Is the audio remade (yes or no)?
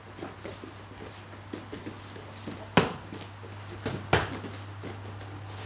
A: no